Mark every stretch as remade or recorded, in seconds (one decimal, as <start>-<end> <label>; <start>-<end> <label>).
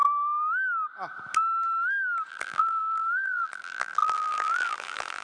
0.0-2.3 recorded; 2.3-5.2 remade